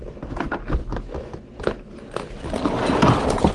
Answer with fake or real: real